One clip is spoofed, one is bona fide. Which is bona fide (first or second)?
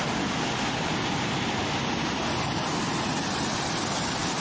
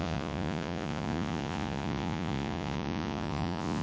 first